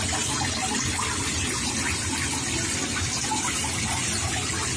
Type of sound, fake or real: real